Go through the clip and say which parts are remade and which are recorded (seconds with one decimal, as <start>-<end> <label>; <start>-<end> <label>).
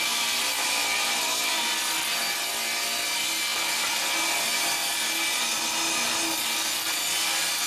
0.0-7.7 recorded